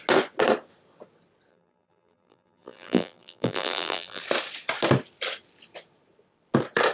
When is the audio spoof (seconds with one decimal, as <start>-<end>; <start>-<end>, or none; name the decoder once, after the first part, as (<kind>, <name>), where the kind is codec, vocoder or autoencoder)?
1.5-4.2 (vocoder, BigVGAN v2)